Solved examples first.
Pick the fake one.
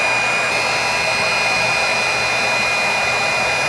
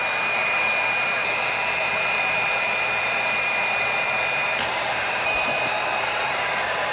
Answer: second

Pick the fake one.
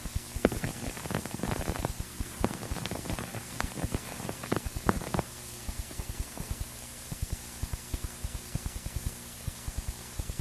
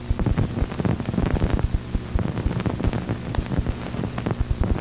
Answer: first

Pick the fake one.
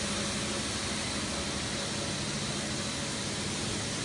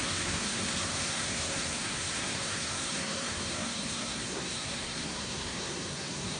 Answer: second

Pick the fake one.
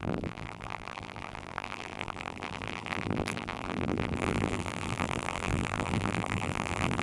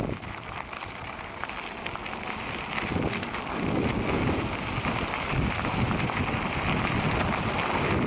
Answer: first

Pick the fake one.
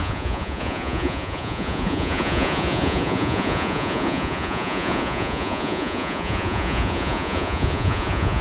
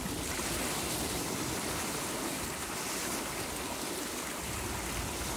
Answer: first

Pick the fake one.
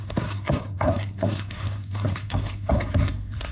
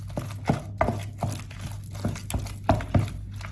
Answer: first